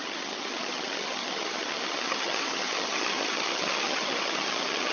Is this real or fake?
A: fake